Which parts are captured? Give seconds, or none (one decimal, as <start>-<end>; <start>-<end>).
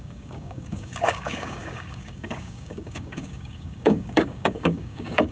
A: none